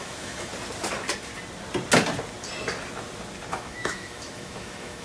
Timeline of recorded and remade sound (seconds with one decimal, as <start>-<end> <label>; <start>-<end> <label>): 0.0-0.5 remade; 0.5-3.5 recorded; 3.5-5.0 remade